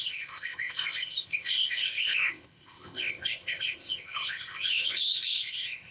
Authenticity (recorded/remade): remade